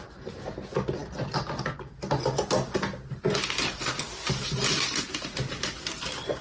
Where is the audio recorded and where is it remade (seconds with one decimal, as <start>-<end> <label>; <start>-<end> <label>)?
0.0-6.4 recorded